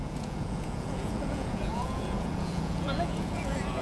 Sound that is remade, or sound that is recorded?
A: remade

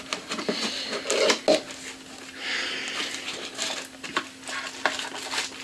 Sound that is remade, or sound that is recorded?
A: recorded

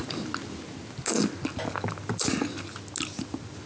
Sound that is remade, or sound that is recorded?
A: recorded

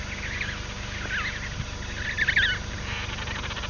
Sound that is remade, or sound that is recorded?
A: recorded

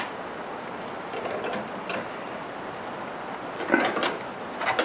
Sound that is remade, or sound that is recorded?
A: recorded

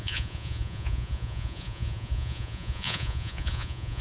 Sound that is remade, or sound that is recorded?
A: remade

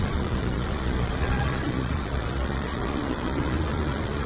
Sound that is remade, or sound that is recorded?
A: remade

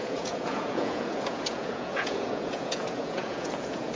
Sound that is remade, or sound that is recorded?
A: remade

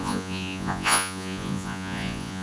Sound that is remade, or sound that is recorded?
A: remade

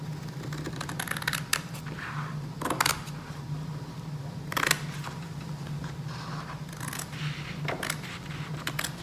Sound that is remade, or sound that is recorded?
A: recorded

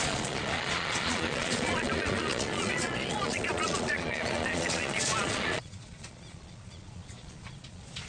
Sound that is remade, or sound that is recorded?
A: remade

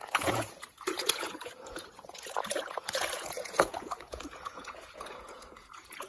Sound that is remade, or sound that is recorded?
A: remade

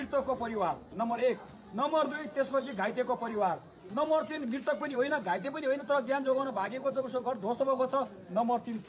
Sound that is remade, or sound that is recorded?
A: remade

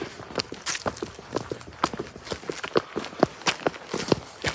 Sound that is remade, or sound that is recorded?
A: recorded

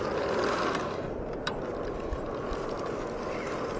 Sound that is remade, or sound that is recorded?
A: recorded